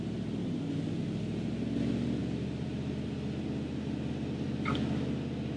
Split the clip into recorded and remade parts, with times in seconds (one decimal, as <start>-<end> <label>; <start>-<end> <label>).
0.0-5.6 recorded